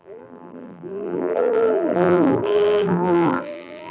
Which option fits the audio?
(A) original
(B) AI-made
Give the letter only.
B